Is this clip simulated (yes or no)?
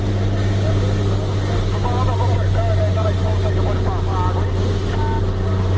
no